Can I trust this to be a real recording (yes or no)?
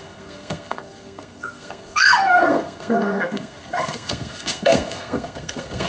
no